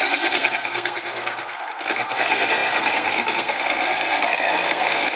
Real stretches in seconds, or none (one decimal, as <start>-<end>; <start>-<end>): none